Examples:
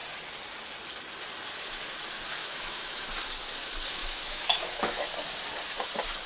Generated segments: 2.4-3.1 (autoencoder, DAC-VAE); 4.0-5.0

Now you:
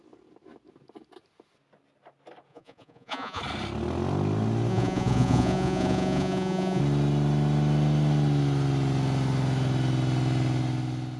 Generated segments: 2.5-3.4 (vocoder, Vocos); 4.7-6.8

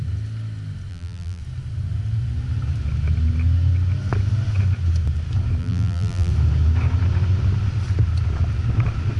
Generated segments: 0.9-1.4 (vocoder, BigVGAN v2); 5.6-6.3

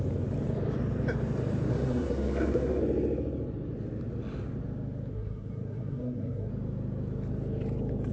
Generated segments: 1.7-2.8 (codec, SNAC); 5.1-6.5